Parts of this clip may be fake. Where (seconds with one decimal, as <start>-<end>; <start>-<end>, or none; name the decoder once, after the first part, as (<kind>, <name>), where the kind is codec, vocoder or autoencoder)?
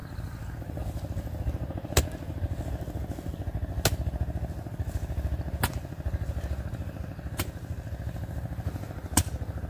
0.0-0.8 (vocoder, BigVGAN v2)